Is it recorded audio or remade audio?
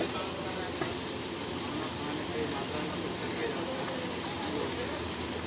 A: recorded